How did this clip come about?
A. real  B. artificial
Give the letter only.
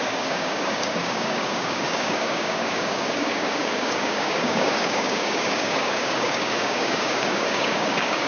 B